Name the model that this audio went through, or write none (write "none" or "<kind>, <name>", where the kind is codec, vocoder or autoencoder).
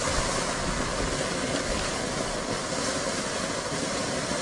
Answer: none